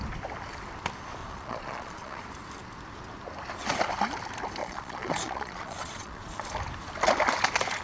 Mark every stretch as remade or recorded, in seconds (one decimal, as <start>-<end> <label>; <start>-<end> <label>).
0.0-1.2 recorded; 1.2-2.2 remade; 2.2-4.6 recorded; 4.6-6.4 remade; 6.4-7.8 recorded